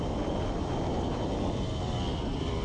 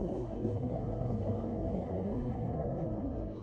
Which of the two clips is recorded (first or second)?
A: first